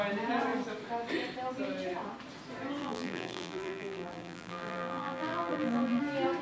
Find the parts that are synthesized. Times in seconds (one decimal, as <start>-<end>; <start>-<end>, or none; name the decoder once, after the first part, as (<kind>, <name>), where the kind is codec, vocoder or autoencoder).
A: 2.8-6.0 (vocoder, BigVGAN v2)

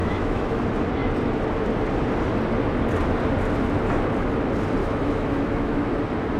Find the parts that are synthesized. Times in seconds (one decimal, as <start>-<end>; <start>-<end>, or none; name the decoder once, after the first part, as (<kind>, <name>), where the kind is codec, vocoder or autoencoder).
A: 0.0-0.6 (autoencoder, DAC-VAE); 4.8-5.9